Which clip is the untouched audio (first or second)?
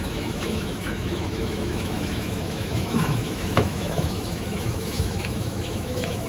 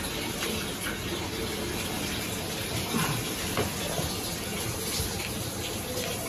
second